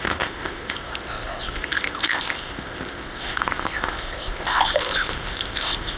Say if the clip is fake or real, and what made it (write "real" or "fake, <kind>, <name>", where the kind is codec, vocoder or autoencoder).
fake, codec, ZipCodec